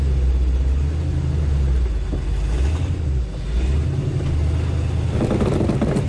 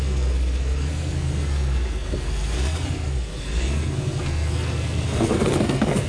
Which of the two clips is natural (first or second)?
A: first